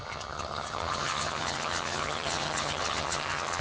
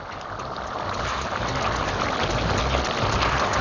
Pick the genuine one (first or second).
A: second